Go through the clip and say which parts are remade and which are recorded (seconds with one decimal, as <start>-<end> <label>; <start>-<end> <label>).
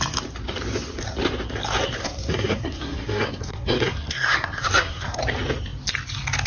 0.0-2.0 recorded; 2.0-5.2 remade; 5.2-6.5 recorded